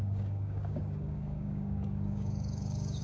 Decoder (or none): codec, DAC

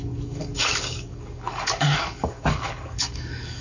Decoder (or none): codec, DAC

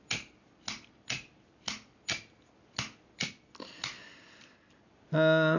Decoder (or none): none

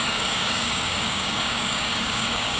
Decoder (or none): codec, DAC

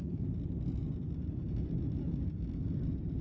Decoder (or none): none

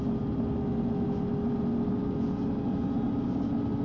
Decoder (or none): none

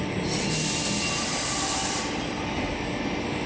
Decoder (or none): none